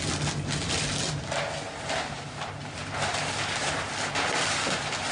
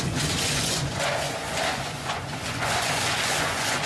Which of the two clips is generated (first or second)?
second